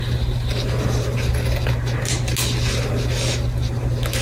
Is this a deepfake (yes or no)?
no